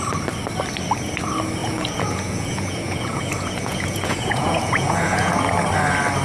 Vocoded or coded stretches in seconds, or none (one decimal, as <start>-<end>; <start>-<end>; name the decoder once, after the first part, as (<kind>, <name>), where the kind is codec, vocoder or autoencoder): 1.6-5.3 (vocoder, Vocos)